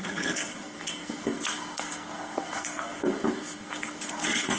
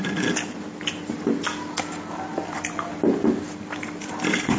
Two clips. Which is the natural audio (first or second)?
second